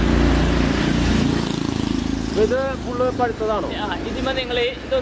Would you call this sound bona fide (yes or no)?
yes